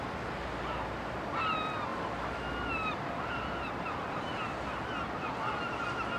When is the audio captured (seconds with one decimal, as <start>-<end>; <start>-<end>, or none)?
0.0-1.9; 4.2-6.2